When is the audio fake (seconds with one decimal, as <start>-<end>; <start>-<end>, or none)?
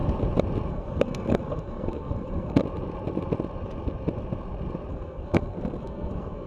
0.7-2.6; 4.9-6.5